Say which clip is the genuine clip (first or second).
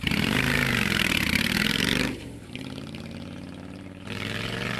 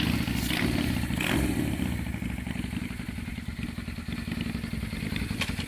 second